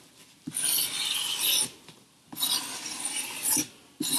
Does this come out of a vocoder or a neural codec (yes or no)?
no